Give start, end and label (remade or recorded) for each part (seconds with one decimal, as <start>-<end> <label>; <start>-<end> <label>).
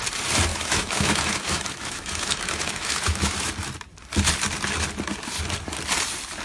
0.0-0.5 recorded; 0.5-3.5 remade; 3.5-6.4 recorded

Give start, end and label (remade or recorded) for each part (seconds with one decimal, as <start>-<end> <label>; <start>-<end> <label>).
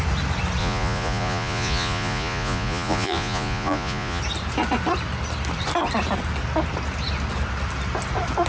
0.0-0.6 recorded; 0.6-4.2 remade; 4.2-8.5 recorded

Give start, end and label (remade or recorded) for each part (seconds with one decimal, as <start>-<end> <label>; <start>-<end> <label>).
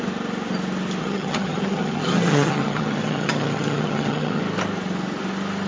0.0-1.0 recorded; 1.0-4.4 remade; 4.4-5.7 recorded